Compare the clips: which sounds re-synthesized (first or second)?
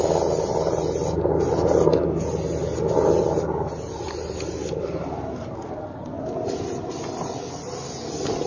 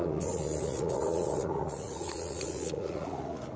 second